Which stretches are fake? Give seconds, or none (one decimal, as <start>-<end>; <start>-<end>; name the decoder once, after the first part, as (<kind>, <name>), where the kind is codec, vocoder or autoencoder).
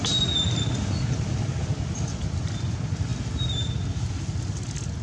none